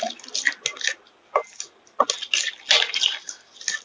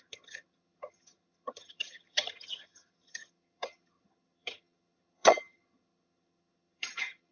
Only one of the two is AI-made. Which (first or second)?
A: second